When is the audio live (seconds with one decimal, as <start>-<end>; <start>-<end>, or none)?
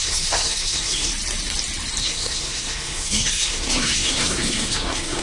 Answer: 1.1-2.0